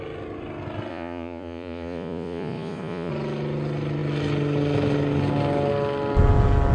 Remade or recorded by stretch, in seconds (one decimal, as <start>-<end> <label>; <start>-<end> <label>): 0.0-0.9 recorded; 0.9-3.1 remade; 3.1-6.7 recorded